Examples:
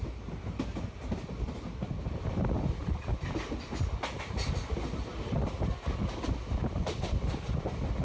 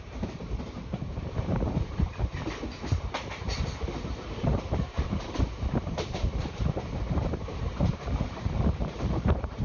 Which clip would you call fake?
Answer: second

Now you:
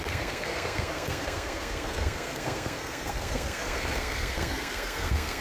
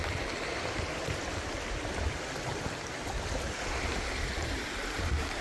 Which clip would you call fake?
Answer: first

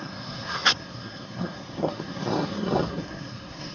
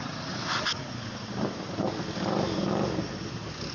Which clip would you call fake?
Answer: first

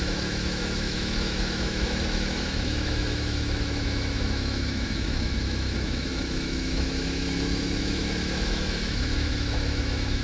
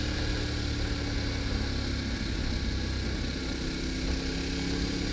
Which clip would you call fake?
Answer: first